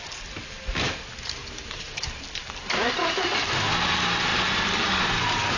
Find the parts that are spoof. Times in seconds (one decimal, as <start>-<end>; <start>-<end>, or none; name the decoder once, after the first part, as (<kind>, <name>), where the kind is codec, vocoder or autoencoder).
1.4-3.3 (vocoder, BigVGAN v2); 4.3-4.9